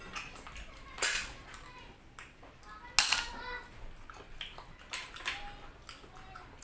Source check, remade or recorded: recorded